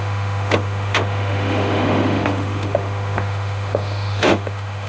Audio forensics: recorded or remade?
remade